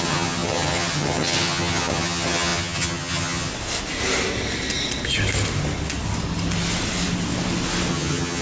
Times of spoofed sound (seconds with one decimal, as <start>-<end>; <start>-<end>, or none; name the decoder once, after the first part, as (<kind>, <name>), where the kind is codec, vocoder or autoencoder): 0.0-3.5 (vocoder, HiFi-GAN); 7.9-8.4